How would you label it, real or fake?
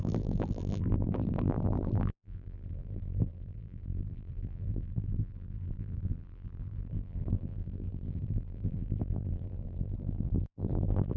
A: fake